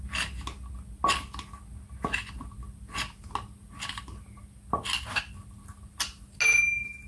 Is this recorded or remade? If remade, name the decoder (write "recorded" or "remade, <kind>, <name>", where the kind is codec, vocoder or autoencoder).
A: recorded